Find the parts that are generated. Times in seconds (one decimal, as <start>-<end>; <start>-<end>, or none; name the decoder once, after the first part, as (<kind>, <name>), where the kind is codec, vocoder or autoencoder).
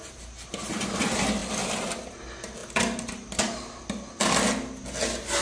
none